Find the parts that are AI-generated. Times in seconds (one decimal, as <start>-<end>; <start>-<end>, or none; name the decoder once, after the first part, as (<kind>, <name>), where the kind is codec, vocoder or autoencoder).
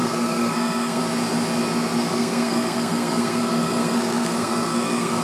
0.0-1.0 (codec, SNAC); 2.0-5.2